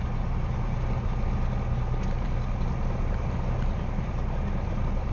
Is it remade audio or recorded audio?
recorded